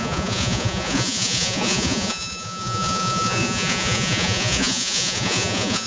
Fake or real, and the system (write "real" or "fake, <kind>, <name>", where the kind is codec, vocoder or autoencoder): fake, vocoder, Vocos